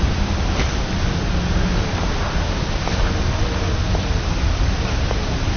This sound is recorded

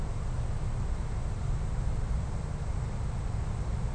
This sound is recorded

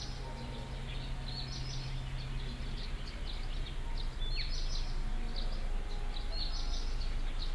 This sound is recorded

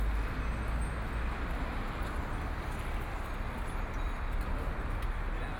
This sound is recorded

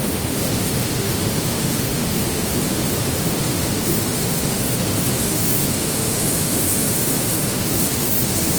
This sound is remade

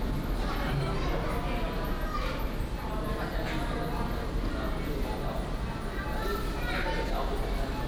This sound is recorded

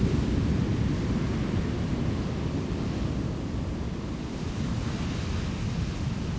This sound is recorded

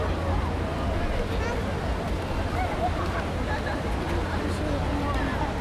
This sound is recorded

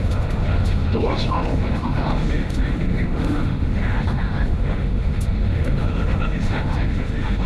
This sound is remade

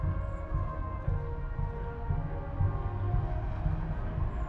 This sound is recorded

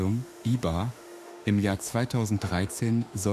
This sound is remade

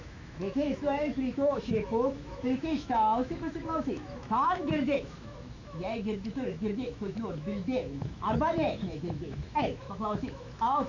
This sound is remade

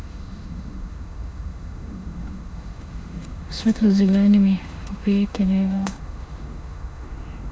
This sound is remade